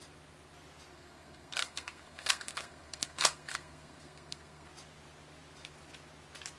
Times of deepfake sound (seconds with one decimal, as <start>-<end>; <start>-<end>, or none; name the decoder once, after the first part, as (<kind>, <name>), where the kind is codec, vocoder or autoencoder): 0.9-4.7 (codec, SNAC)